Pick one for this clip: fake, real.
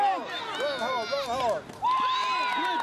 real